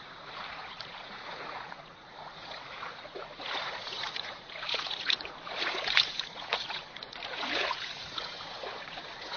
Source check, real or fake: fake